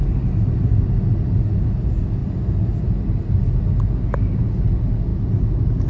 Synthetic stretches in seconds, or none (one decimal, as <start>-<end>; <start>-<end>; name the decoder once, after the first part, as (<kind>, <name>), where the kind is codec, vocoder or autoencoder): none